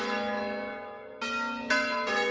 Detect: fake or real real